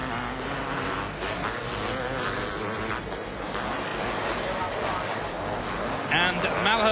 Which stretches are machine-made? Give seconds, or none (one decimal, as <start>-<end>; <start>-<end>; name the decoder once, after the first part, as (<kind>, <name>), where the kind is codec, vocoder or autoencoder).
none